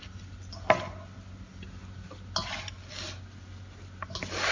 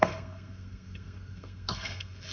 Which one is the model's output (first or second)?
second